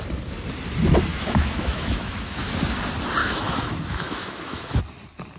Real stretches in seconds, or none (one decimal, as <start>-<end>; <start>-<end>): 0.0-1.1; 2.5-3.2; 4.8-5.4